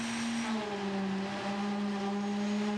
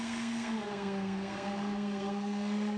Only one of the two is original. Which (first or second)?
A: first